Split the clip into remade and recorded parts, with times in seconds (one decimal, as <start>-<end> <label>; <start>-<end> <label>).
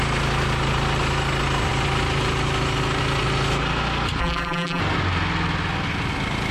0.0-4.2 recorded; 4.2-4.8 remade; 4.8-6.5 recorded